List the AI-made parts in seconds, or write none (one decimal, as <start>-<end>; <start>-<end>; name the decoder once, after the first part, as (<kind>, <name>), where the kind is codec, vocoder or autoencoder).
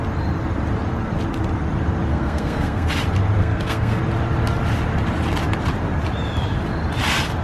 2.1-2.9 (codec, SNAC); 3.4-4.0